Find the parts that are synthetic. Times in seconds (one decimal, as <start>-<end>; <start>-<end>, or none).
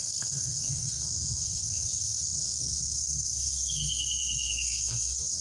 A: 0.0-5.4